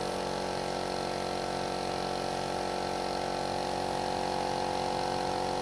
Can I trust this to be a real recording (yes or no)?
yes